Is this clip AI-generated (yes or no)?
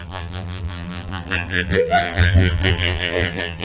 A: yes